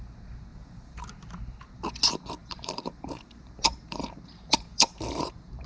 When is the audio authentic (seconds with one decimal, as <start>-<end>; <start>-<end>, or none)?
0.0-0.5; 1.8-2.4